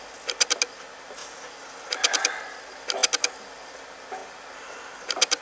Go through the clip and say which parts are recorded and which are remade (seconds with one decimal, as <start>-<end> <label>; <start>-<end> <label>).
0.0-1.2 recorded; 1.2-2.6 remade; 2.6-5.4 recorded